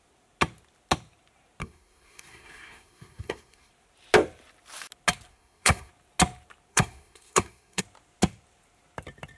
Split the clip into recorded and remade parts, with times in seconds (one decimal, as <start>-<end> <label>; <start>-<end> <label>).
0.0-1.6 recorded; 1.6-3.7 remade; 3.7-5.3 recorded; 5.3-5.9 remade; 5.9-6.7 recorded; 6.7-7.8 remade; 7.8-9.4 recorded